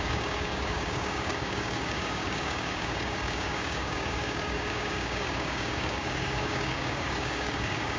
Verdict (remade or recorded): remade